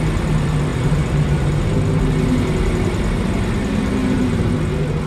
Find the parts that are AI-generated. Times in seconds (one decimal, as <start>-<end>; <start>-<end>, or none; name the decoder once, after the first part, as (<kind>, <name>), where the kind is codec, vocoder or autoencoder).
0.7-1.6 (vocoder, BigVGAN v2); 4.0-4.5